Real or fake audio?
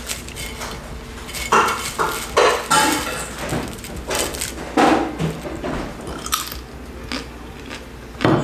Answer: real